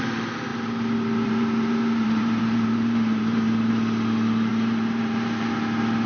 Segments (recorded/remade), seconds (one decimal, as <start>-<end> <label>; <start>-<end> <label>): 0.0-0.5 recorded; 0.5-3.7 remade; 3.7-4.5 recorded; 4.5-5.5 remade; 5.5-6.1 recorded